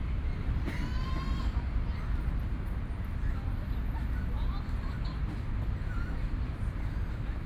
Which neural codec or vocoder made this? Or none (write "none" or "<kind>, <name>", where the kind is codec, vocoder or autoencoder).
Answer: vocoder, BigVGAN v2